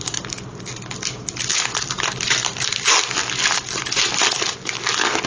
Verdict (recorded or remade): recorded